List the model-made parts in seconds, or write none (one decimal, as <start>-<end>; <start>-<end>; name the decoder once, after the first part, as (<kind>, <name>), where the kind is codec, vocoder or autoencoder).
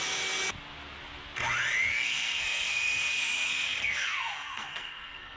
1.9-5.4 (codec, SNAC)